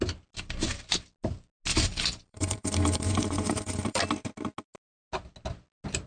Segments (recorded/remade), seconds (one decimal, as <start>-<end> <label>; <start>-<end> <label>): 0.0-1.7 recorded; 1.7-4.0 remade; 4.0-6.1 recorded